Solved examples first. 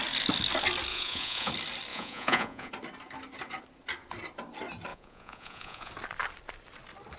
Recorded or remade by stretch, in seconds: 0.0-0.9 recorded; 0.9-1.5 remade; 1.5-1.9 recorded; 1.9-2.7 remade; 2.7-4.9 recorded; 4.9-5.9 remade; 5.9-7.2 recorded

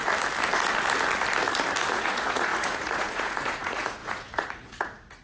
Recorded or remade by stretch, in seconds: 0.0-1.9 recorded; 1.9-5.2 remade

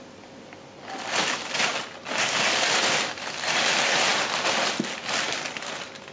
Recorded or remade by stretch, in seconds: 0.0-6.1 recorded

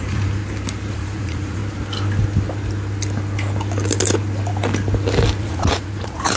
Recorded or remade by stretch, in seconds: 0.0-0.4 remade; 0.4-0.9 recorded; 0.9-1.6 remade; 1.6-5.4 recorded; 5.4-6.4 remade